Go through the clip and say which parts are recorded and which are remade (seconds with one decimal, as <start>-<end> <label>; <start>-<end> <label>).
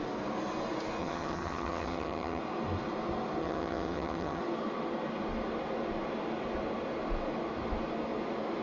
0.0-1.0 recorded; 1.0-2.4 remade; 2.4-3.4 recorded; 3.4-4.4 remade; 4.4-8.6 recorded